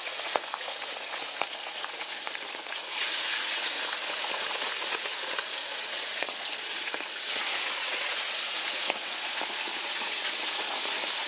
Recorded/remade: remade